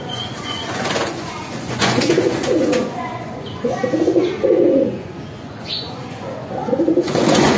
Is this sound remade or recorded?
remade